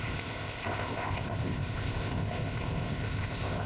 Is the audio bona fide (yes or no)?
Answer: no